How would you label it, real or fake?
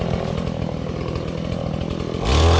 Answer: real